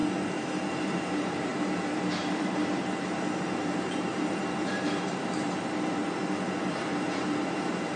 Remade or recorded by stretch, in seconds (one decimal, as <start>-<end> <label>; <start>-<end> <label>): 0.0-0.7 recorded; 0.7-6.2 remade; 6.2-6.7 recorded; 6.7-8.0 remade